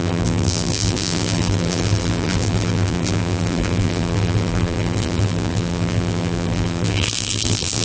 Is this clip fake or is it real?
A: fake